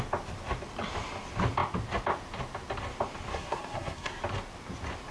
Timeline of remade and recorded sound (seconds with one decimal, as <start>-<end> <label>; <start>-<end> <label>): 0.0-3.3 recorded; 3.3-4.2 remade; 4.2-5.1 recorded